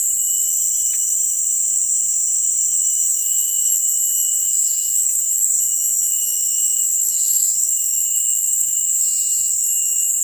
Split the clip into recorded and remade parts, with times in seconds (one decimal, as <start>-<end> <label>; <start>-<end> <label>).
0.0-3.0 recorded; 3.0-3.8 remade; 3.8-4.4 recorded; 4.4-5.6 remade; 5.6-6.1 recorded; 6.1-9.0 remade; 9.0-10.2 recorded